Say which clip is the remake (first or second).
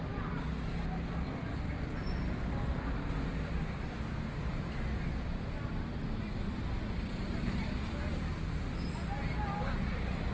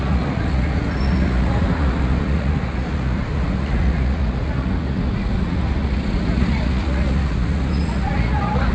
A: second